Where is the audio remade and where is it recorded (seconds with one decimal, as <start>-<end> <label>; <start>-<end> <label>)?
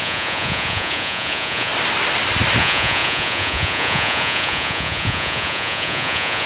0.0-1.7 remade; 1.7-2.6 recorded; 2.6-6.5 remade